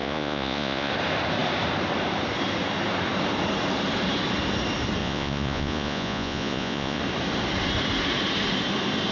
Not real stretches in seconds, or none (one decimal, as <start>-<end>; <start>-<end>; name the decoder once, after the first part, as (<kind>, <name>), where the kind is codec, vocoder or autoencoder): 0.0-0.9 (vocoder, Vocos); 5.0-7.0